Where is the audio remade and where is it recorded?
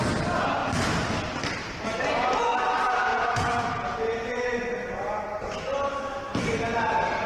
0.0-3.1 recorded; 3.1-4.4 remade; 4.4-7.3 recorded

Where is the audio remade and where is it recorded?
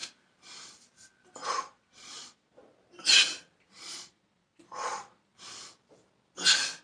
0.0-1.5 recorded; 1.5-2.6 remade; 2.6-3.6 recorded; 3.6-5.3 remade; 5.3-6.8 recorded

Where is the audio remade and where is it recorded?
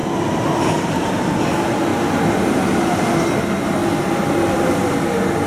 0.0-5.5 recorded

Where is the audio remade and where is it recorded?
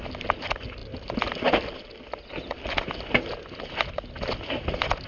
0.0-5.1 recorded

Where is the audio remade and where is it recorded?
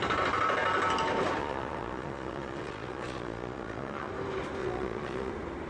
0.0-1.4 recorded; 1.4-4.1 remade; 4.1-4.6 recorded; 4.6-5.3 remade; 5.3-5.7 recorded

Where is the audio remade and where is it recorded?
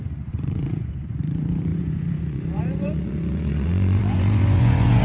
0.0-5.0 remade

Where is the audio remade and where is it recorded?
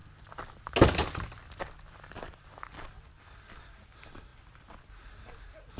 0.0-5.8 recorded